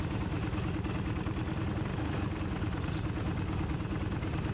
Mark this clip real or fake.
real